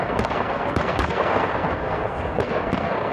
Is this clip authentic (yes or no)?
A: no